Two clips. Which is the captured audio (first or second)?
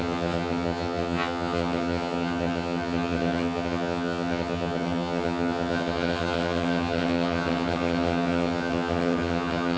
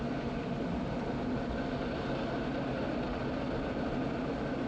second